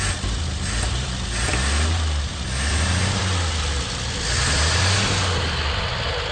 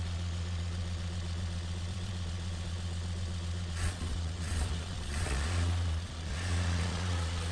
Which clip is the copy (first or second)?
second